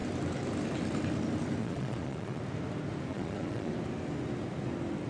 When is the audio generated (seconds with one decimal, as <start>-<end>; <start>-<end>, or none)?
1.6-2.4; 3.1-3.7